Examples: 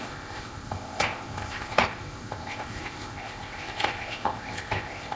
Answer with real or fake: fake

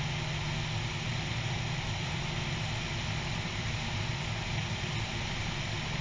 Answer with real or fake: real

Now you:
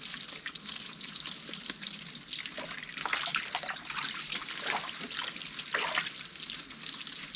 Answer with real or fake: real